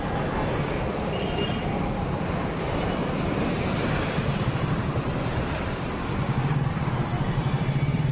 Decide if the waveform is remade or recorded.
remade